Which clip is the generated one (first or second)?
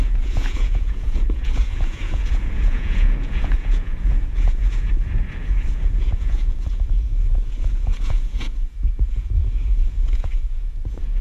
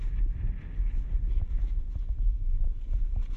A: first